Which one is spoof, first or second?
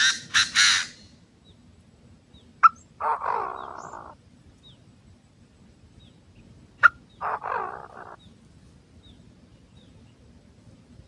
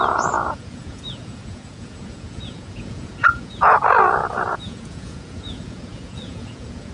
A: second